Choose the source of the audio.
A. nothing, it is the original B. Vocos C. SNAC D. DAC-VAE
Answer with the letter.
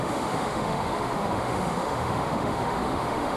D